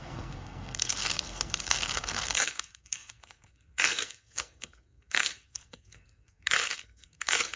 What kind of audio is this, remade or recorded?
remade